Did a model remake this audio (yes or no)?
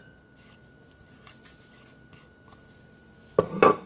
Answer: no